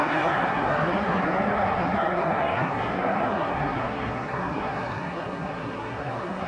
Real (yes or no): no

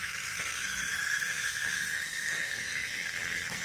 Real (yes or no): no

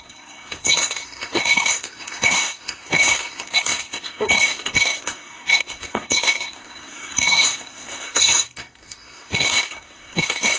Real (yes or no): no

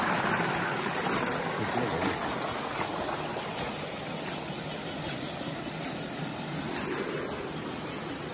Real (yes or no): yes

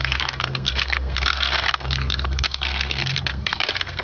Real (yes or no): no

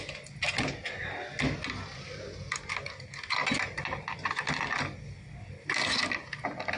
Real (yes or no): yes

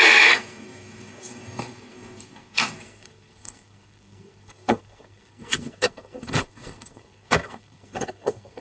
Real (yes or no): no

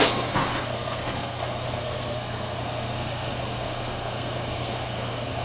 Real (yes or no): no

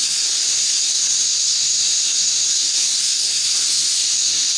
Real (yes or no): no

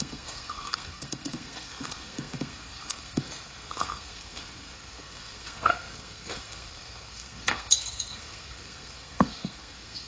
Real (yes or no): no